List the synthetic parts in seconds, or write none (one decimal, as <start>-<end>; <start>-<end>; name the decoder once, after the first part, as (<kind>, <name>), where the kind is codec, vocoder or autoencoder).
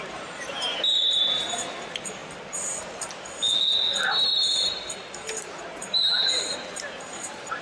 0.0-0.7 (vocoder, BigVGAN v2); 1.2-2.2; 5.4-7.6